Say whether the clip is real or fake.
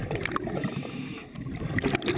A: real